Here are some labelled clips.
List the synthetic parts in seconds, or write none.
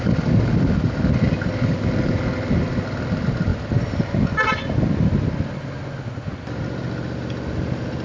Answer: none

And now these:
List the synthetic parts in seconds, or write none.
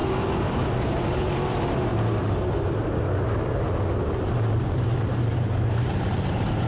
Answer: 0.0-6.7 (vocoder, BigVGAN v2)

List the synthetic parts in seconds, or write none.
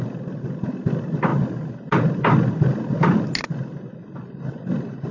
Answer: none